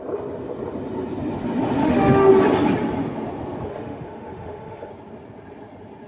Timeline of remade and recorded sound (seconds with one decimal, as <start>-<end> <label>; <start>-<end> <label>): 0.0-1.8 recorded; 1.8-2.3 remade; 2.3-3.7 recorded; 3.7-4.9 remade; 4.9-6.1 recorded